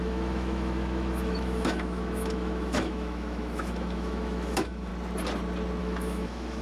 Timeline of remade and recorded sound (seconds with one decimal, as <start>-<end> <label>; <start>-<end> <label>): 0.0-4.9 remade; 4.9-5.8 recorded; 5.8-6.6 remade